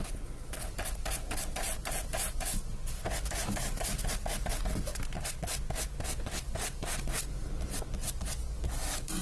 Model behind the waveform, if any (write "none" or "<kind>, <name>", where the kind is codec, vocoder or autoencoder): none